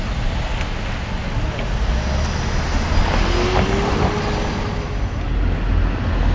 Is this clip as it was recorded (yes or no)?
yes